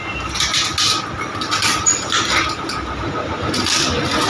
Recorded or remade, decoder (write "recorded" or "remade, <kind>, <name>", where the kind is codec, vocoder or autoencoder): recorded